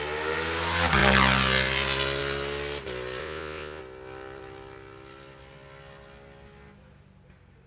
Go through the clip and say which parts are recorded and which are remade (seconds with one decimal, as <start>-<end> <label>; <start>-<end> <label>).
0.0-3.2 recorded; 3.2-3.8 remade; 3.8-7.7 recorded